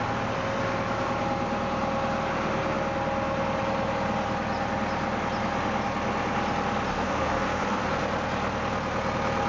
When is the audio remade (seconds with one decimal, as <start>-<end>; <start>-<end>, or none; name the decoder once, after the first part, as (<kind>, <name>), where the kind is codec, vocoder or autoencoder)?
6.9-8.0 (codec, SNAC)